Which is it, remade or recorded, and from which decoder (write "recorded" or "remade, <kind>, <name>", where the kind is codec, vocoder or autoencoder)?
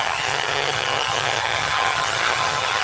remade, vocoder, HiFi-GAN